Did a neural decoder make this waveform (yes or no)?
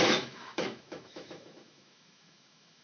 yes